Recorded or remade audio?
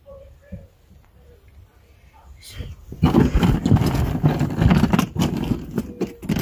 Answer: recorded